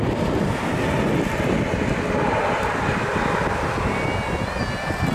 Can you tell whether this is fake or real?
real